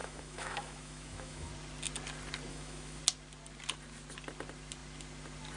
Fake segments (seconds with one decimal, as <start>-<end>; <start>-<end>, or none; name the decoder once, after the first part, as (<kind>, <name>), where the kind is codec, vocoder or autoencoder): 0.0-1.5 (autoencoder, DAC-VAE); 2.5-3.0

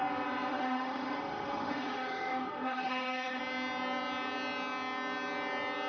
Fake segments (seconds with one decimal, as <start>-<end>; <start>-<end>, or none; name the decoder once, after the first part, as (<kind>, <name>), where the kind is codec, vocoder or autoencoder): 0.5-3.4 (autoencoder, DAC-VAE)

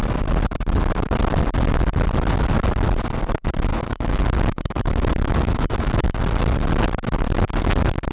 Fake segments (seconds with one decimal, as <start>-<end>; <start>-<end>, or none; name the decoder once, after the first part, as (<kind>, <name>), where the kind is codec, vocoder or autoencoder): 3.7-6.2 (autoencoder, DAC-VAE)

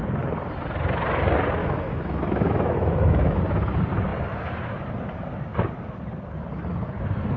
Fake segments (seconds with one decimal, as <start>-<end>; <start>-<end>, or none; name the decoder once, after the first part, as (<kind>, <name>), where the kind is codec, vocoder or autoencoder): 1.6-3.4 (autoencoder, DAC-VAE)